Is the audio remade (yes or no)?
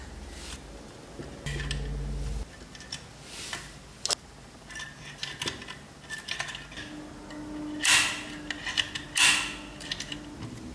no